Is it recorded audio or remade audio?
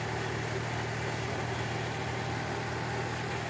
recorded